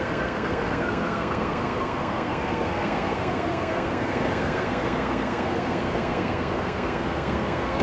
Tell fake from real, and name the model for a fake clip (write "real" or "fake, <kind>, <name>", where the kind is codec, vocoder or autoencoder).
fake, codec, SNAC